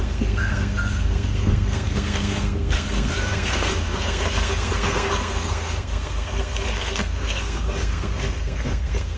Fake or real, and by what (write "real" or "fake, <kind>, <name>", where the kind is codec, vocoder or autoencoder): fake, codec, SNAC